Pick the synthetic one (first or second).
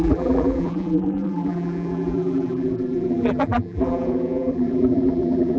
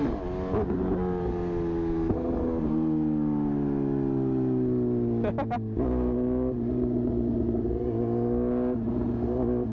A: first